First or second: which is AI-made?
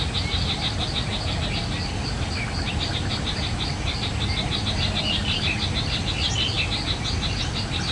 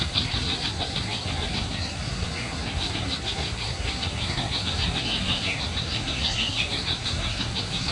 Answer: second